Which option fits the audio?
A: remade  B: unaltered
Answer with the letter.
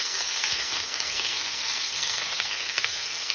A